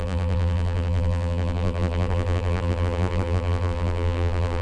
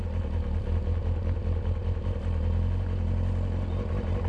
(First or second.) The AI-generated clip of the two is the first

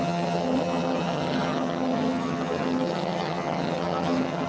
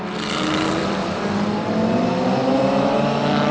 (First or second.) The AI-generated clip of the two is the first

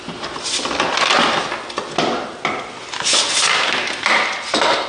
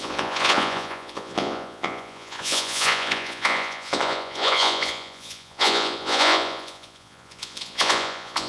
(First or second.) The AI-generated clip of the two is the second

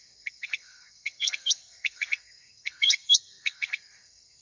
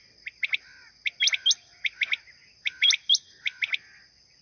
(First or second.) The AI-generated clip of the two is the first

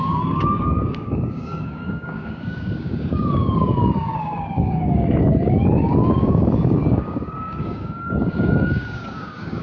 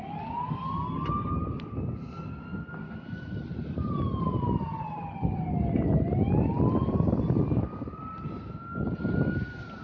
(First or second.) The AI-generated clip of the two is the first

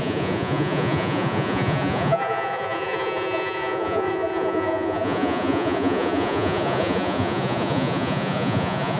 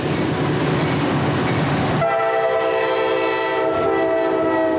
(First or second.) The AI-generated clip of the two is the first